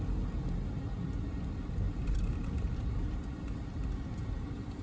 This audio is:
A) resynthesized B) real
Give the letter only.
B